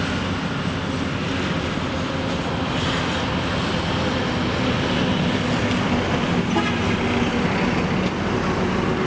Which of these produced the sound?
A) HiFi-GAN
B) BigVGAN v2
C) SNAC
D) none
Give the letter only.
D